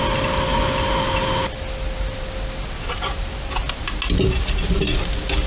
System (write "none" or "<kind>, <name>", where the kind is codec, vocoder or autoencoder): none